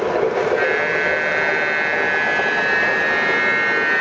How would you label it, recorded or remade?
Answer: recorded